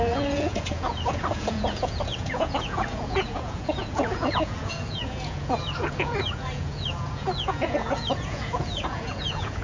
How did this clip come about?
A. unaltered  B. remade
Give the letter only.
B